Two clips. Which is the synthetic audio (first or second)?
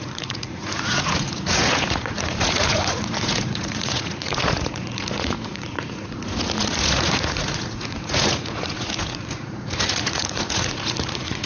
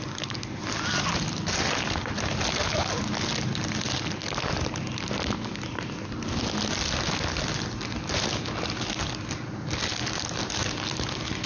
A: first